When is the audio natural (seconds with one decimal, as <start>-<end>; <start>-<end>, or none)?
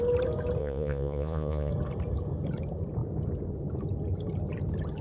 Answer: 0.0-0.6; 1.7-5.0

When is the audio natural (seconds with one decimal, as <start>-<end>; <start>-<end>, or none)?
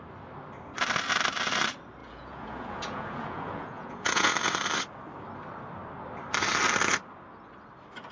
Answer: 0.0-2.0; 4.3-8.1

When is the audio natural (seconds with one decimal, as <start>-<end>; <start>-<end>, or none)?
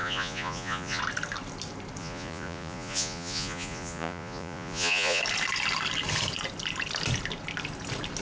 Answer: 1.0-2.0; 5.2-8.2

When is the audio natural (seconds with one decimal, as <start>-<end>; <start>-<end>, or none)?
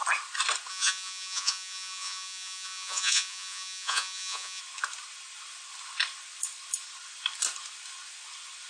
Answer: 0.0-0.7; 4.6-8.7